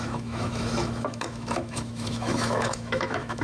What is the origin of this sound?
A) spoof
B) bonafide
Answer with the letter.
A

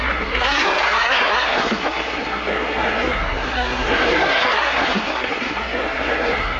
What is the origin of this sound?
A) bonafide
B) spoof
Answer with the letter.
B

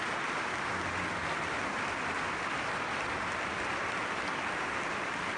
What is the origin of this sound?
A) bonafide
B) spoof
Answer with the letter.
A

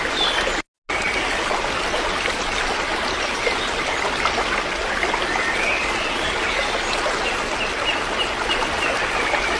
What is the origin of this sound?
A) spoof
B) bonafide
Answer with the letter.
B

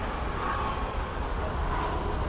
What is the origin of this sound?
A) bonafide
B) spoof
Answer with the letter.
A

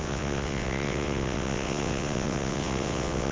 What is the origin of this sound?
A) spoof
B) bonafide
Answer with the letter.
A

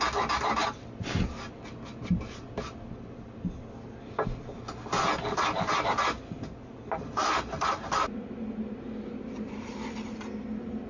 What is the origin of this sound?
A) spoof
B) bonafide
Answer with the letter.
B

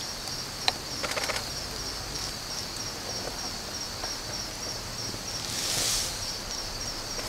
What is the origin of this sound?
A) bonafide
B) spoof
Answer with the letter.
A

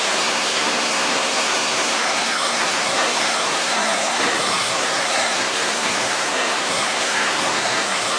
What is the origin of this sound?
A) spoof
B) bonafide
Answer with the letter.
A